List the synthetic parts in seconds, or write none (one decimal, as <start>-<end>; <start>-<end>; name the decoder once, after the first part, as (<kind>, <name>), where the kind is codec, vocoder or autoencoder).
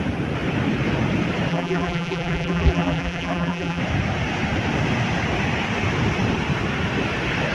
1.5-3.8 (vocoder, BigVGAN v2)